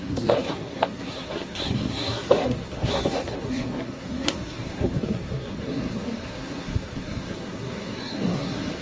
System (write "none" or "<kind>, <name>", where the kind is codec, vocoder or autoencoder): codec, SNAC